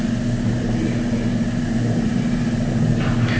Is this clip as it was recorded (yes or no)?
yes